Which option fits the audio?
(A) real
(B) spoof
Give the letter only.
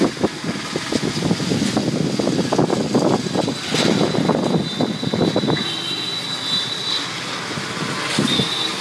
A